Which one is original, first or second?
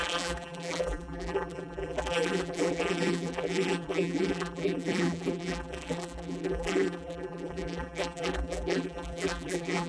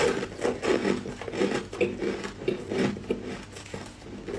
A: second